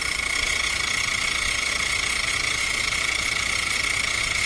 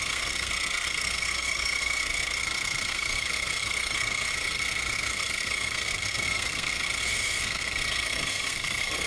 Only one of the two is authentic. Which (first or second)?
first